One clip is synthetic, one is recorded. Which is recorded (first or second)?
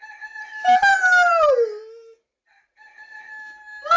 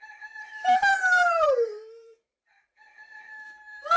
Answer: first